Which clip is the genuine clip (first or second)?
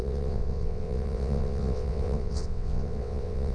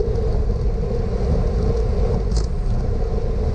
second